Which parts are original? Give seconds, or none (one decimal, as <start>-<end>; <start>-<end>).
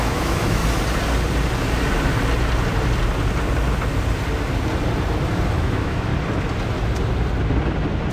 0.6-5.5; 6.1-8.1